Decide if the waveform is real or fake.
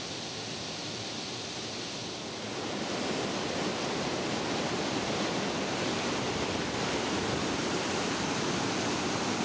real